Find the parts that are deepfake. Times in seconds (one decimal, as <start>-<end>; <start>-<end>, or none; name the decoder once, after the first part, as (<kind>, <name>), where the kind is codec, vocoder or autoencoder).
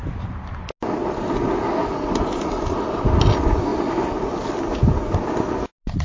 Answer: none